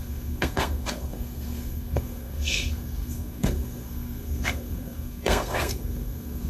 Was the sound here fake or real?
fake